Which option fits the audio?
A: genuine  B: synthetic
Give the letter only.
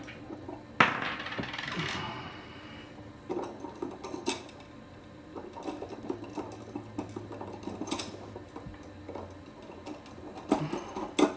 A